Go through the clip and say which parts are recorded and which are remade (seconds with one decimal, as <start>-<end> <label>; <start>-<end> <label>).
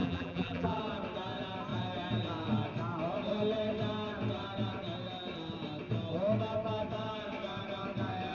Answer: 0.0-0.8 remade; 0.8-8.3 recorded